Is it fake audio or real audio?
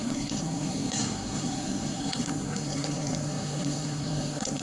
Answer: fake